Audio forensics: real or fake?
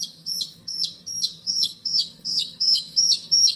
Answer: fake